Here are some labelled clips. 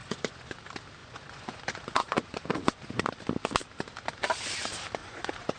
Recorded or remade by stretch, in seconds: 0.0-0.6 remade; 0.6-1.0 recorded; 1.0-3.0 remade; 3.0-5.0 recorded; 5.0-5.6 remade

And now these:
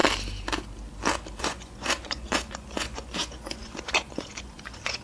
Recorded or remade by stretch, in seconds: 0.0-1.4 recorded; 1.4-5.0 remade

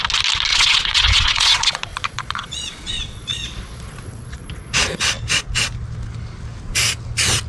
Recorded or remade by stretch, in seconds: 0.0-0.5 recorded; 0.5-5.0 remade; 5.0-7.5 recorded

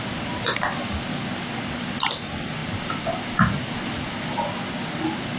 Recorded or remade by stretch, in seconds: 0.0-5.4 recorded

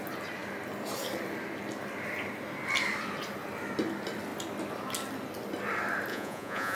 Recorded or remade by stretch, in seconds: 0.0-6.1 recorded; 6.1-6.8 remade

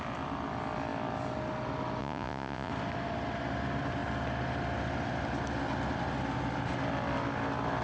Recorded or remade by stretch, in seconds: 0.0-2.0 recorded; 2.0-2.7 remade; 2.7-7.8 recorded

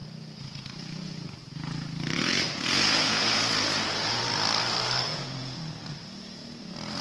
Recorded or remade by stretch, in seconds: 0.0-4.2 remade; 4.2-5.1 recorded; 5.1-5.7 remade; 5.7-7.0 recorded